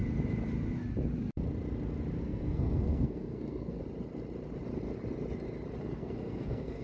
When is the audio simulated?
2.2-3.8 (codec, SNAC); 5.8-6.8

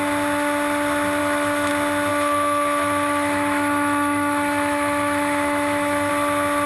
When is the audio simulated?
1.2-1.7 (autoencoder, DAC-VAE); 2.1-6.1

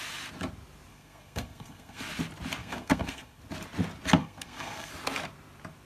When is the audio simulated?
0.9-2.0 (codec, SNAC); 2.6-3.4; 4.2-4.9

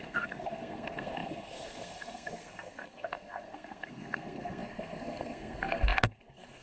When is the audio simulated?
0.0-6.6 (codec, SNAC)

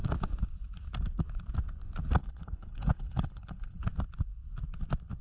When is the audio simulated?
2.2-3.8 (codec, HILCodec)